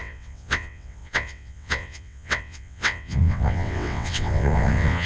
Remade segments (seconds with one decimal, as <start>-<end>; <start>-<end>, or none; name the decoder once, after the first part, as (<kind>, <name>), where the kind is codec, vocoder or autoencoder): 0.0-5.1 (vocoder, WaveNeXt)